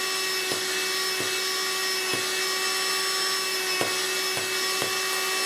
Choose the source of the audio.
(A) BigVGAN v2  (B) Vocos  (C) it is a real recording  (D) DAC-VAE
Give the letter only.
C